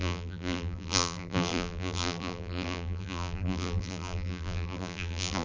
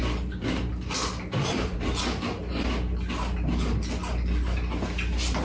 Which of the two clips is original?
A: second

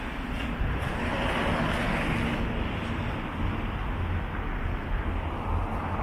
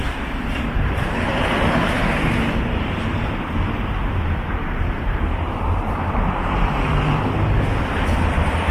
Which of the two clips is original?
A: first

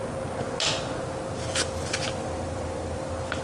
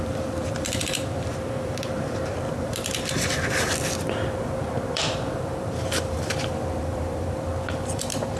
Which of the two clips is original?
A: first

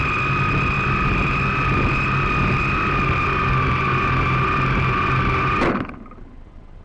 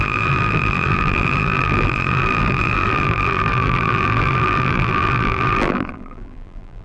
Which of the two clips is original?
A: first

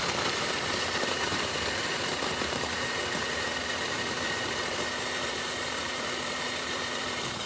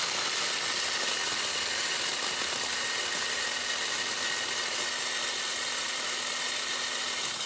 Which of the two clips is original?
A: second